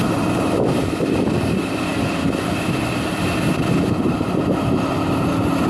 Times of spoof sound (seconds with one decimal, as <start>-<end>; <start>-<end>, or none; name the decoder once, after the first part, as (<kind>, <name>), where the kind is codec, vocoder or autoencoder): none